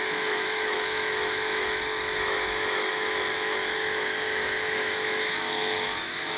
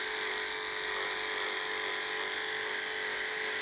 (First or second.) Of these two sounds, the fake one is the first